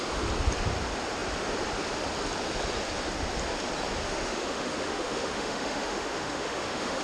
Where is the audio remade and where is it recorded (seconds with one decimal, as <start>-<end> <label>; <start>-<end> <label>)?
0.0-4.0 recorded; 4.0-7.0 remade